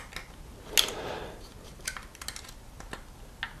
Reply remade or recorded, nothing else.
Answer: recorded